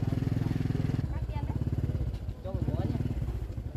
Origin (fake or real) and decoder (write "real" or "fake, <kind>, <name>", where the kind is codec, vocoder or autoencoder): real